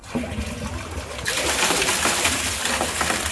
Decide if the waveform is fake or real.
real